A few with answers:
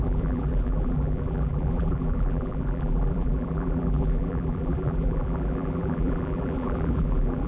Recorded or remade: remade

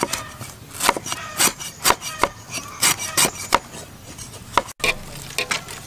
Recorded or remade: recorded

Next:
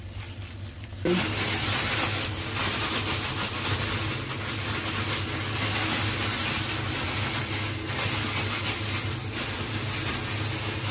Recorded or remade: recorded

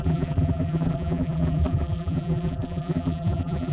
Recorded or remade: remade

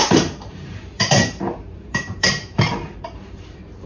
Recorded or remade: remade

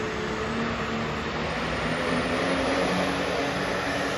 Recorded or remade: recorded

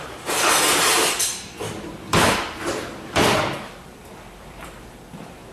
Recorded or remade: remade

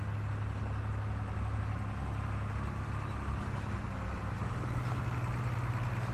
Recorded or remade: recorded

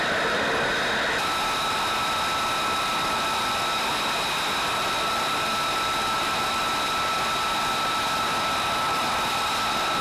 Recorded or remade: recorded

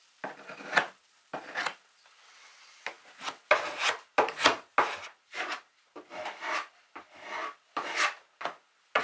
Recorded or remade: recorded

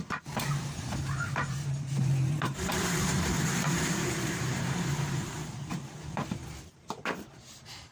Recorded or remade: remade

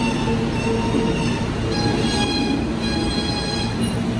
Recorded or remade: recorded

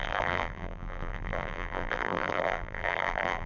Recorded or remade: remade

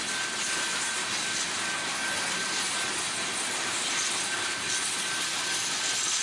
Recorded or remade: recorded